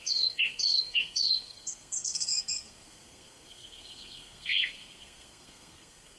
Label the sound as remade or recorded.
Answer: remade